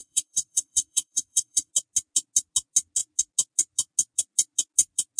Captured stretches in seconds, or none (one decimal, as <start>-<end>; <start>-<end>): 1.7-5.2